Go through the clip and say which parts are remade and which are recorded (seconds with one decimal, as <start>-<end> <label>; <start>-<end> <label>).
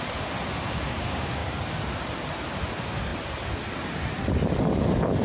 0.0-1.4 recorded; 1.4-2.5 remade; 2.5-5.2 recorded